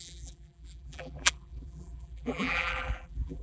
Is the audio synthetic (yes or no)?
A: yes